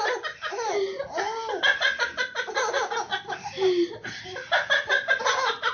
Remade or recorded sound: recorded